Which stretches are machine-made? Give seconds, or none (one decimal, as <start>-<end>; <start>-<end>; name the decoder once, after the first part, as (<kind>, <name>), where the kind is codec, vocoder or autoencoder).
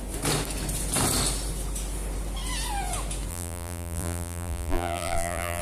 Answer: 3.3-5.6 (vocoder, BigVGAN v2)